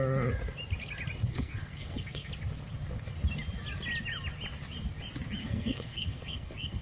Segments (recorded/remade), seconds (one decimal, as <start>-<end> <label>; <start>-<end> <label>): 0.0-1.3 recorded; 1.3-2.3 remade; 2.3-5.4 recorded; 5.4-6.8 remade